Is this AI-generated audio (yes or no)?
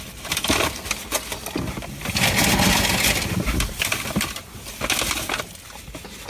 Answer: no